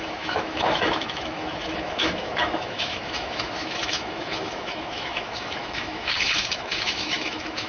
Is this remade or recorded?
remade